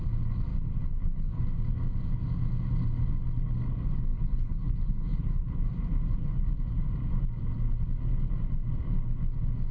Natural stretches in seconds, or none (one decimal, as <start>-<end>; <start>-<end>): 0.0-0.5; 1.4-4.1; 5.6-9.7